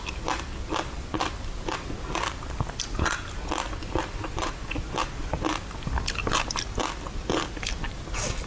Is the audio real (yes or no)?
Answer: yes